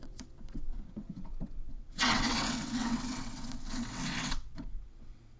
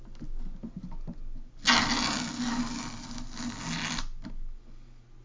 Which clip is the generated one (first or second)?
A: first